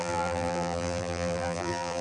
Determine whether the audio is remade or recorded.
remade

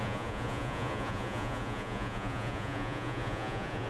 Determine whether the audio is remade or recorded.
remade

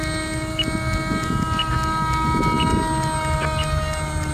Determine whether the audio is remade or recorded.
recorded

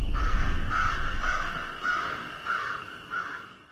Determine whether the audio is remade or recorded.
remade